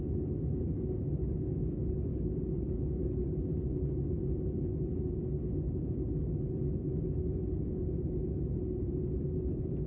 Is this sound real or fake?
real